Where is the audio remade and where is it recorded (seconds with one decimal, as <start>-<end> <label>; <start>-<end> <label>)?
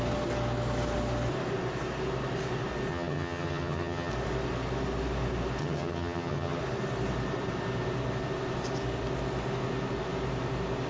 0.0-2.9 recorded; 2.9-4.1 remade; 4.1-5.6 recorded; 5.6-6.6 remade; 6.6-10.9 recorded